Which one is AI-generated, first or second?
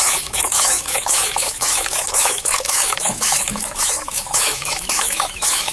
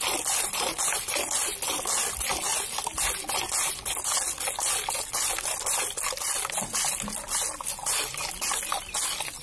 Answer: first